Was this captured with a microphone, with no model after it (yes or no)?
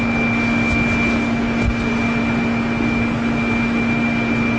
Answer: yes